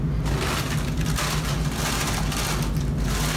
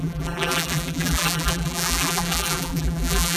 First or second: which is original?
first